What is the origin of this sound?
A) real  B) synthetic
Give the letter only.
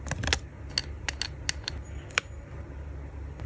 A